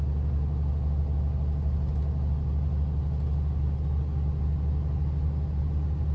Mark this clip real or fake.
real